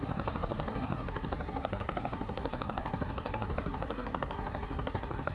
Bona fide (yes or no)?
no